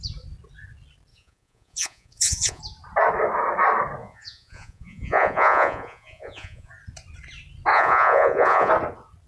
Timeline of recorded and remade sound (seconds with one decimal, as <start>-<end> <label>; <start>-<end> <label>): 0.0-1.1 recorded; 1.1-2.6 remade; 2.6-4.0 recorded; 4.0-6.7 remade; 6.7-7.7 recorded; 7.7-8.7 remade; 8.7-9.3 recorded